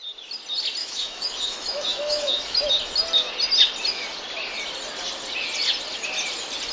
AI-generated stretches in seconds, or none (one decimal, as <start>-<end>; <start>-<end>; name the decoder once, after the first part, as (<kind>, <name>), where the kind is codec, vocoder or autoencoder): 0.8-2.7 (autoencoder, DAC-VAE)